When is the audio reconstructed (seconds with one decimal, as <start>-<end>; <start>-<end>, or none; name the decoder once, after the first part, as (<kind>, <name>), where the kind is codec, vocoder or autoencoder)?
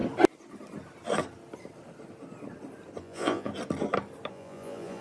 3.0-3.5 (vocoder, Vocos); 4.3-5.0